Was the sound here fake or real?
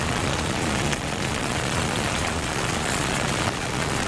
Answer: fake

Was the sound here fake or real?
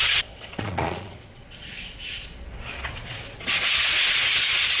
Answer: fake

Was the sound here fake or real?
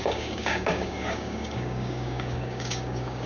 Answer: fake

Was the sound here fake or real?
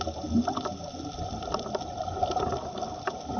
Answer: real